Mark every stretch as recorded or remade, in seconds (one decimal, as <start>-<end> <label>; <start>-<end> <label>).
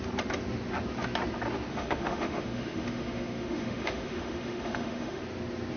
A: 0.0-1.7 recorded; 1.7-5.2 remade; 5.2-5.8 recorded